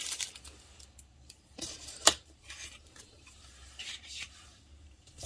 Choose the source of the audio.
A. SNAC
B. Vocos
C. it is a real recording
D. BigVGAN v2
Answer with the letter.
D